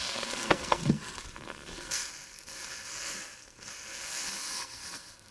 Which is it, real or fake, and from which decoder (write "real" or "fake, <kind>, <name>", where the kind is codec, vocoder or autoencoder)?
fake, codec, SNAC